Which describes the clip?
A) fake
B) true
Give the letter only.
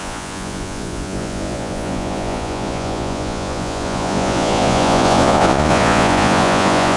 A